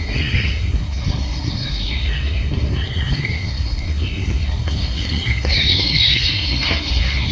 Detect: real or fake fake